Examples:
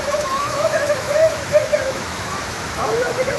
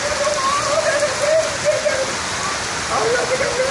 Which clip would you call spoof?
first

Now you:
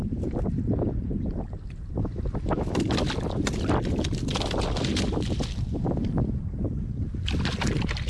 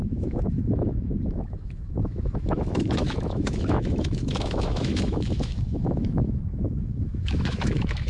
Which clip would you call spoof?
second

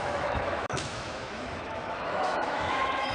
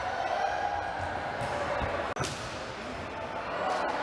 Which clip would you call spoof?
first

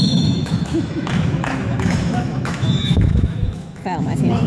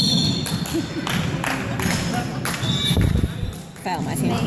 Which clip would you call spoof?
first